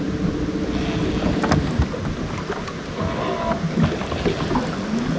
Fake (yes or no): no